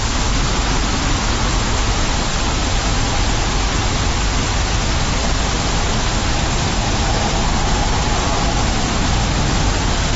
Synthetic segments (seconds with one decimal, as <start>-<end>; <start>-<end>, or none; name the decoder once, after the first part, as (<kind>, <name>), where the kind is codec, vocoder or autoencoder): 9.2-9.7 (autoencoder, DAC-VAE)